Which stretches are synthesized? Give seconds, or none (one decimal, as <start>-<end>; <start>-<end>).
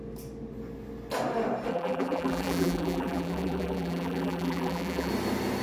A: 1.7-5.1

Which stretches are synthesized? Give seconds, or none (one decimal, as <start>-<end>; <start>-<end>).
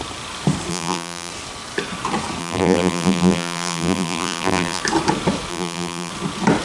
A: 0.7-1.3; 2.4-4.8; 5.5-6.1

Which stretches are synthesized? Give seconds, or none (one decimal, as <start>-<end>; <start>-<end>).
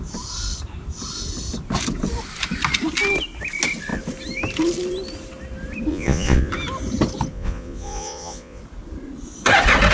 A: 5.9-6.5; 7.3-8.6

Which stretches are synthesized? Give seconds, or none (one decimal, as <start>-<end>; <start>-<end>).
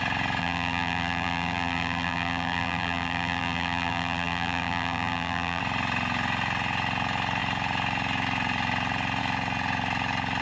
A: 0.4-5.6